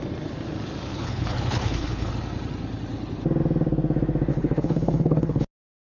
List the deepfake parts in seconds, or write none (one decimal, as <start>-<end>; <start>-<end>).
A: 0.9-2.1; 4.3-5.4

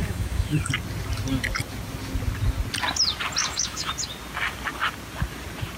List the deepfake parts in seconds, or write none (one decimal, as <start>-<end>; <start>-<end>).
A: 0.0-0.7; 3.4-3.9

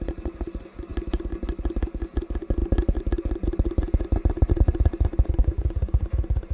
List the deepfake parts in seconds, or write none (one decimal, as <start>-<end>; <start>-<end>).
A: 5.4-6.0

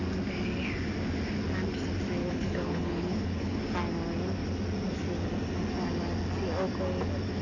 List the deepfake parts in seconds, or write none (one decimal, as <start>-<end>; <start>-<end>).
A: 2.2-3.6